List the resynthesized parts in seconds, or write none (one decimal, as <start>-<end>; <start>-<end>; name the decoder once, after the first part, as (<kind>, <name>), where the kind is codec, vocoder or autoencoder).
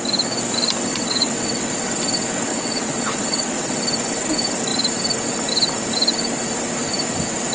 0.9-1.7 (vocoder, WaveNeXt); 2.5-3.8